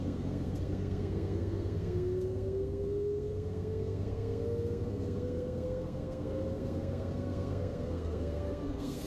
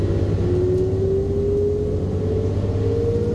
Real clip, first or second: second